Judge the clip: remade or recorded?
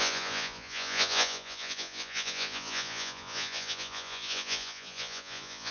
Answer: remade